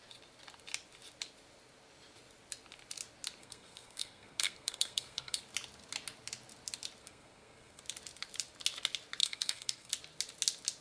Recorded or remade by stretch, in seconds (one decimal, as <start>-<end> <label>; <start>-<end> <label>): 0.0-3.4 recorded; 3.4-5.4 remade; 5.4-7.0 recorded; 7.0-7.8 remade; 7.8-9.2 recorded; 9.2-9.9 remade; 9.9-10.8 recorded